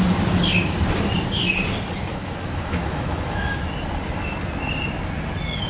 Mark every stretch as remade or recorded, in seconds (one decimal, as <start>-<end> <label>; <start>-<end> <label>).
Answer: 0.0-2.1 recorded; 2.1-3.7 remade; 3.7-5.7 recorded